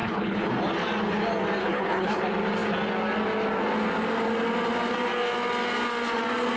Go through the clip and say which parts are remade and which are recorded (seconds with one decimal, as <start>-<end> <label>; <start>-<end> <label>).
0.0-0.5 remade; 0.5-1.6 recorded; 1.6-2.2 remade; 2.2-6.6 recorded